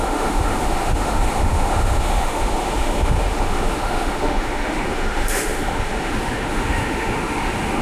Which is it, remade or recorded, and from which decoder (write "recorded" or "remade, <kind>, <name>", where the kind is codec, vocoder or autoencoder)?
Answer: remade, autoencoder, DAC-VAE